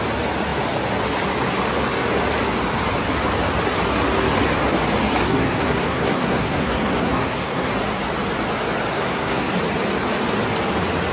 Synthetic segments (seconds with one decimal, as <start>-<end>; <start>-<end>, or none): 5.3-7.7; 8.9-9.5